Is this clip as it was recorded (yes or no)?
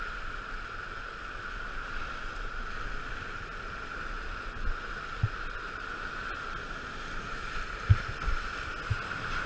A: yes